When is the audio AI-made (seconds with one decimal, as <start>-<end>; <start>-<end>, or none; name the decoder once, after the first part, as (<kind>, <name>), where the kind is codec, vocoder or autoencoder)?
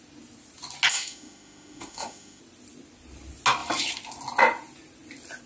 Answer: 0.9-2.4 (autoencoder, DAC-VAE)